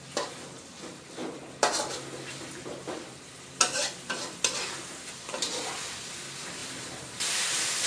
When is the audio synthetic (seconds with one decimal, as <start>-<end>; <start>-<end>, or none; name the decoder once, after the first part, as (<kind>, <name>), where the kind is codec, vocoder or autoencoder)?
1.2-5.9 (vocoder, BigVGAN v2); 6.6-7.3